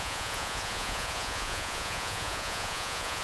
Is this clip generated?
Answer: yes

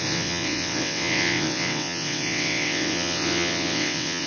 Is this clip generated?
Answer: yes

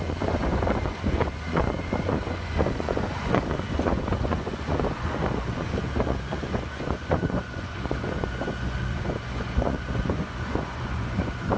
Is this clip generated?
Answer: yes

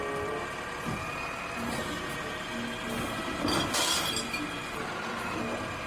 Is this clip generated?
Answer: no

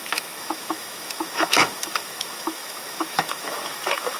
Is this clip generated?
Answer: yes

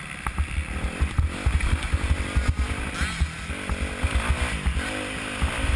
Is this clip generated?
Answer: no